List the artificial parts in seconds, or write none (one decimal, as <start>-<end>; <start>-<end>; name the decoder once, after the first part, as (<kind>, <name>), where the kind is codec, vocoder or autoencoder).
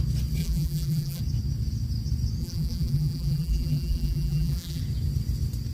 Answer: 0.4-1.2 (vocoder, BigVGAN v2); 2.4-4.8